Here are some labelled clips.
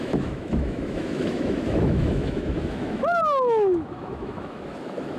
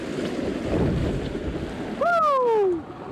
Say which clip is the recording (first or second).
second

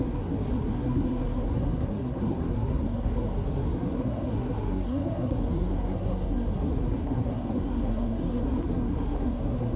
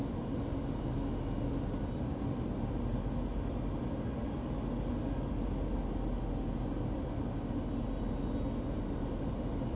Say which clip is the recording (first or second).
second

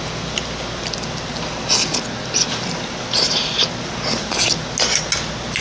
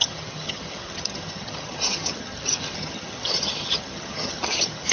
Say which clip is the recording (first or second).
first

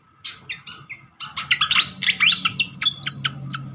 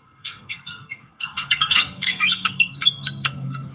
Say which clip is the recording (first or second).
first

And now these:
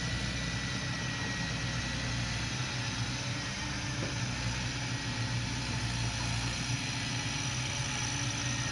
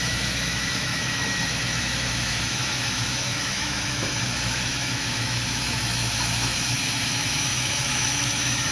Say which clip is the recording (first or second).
first